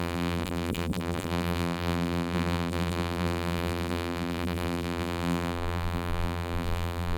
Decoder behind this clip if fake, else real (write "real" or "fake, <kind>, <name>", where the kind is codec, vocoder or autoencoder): fake, vocoder, BigVGAN v2